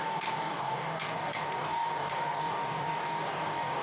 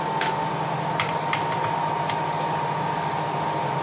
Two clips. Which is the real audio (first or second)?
second